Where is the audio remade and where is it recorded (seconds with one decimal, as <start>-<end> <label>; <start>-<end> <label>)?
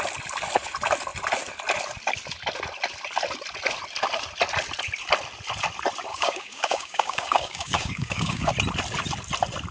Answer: 0.0-6.1 recorded; 6.1-8.5 remade; 8.5-9.7 recorded